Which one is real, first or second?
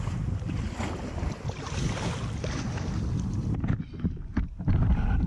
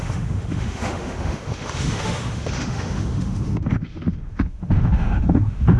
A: first